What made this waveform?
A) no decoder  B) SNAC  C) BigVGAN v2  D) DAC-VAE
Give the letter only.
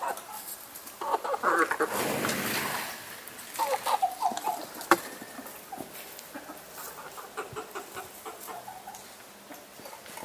A